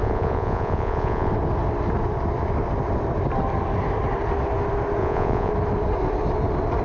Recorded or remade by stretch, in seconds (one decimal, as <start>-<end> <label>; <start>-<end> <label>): 0.0-1.3 remade; 1.3-5.0 recorded; 5.0-5.5 remade; 5.5-6.8 recorded